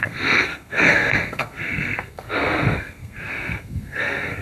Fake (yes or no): yes